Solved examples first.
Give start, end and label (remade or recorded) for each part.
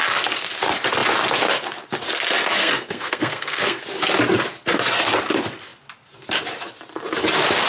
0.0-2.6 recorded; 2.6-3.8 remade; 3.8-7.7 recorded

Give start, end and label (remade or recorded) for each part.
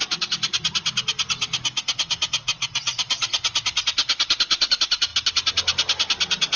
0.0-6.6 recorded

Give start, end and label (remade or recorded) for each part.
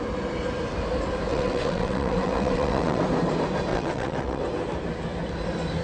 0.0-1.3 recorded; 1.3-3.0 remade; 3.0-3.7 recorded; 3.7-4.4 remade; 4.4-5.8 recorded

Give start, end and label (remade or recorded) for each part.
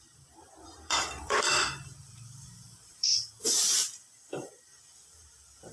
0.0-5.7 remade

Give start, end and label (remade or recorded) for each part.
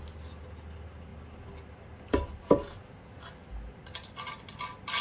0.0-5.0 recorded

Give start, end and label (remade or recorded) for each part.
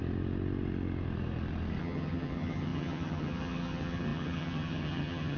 0.0-1.8 recorded; 1.8-5.4 remade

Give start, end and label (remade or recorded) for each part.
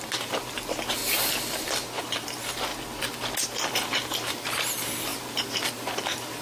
0.0-1.0 remade; 1.0-2.0 recorded; 2.0-2.7 remade; 2.7-3.7 recorded; 3.7-6.4 remade